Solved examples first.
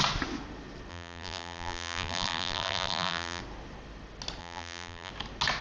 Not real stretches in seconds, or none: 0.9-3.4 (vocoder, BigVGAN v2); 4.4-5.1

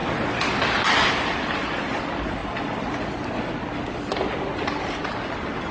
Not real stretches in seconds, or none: none

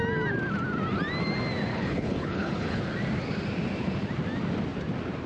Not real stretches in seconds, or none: 1.7-2.8 (codec, HILCodec)

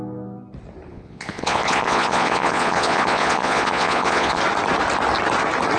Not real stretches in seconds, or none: 0.9-4.4 (vocoder, Vocos)

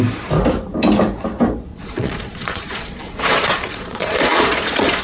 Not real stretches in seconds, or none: 1.7-5.0 (vocoder, Vocos)

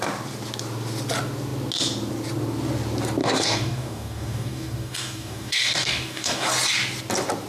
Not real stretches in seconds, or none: 3.2-6.5 (codec, DAC)

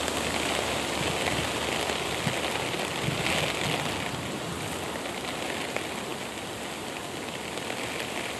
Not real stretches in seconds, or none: none